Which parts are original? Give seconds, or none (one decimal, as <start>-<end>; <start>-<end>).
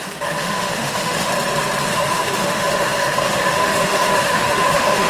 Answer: 1.3-1.9